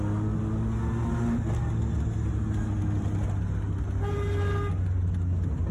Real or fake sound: real